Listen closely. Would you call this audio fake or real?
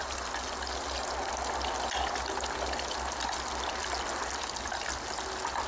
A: real